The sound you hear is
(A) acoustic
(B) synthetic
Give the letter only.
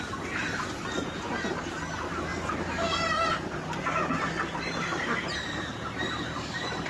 A